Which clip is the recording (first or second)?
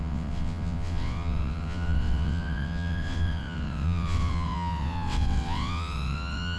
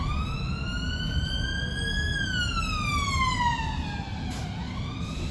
second